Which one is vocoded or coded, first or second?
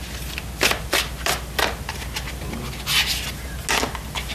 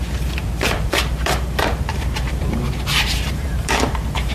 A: second